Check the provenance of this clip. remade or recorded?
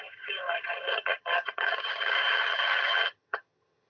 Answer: remade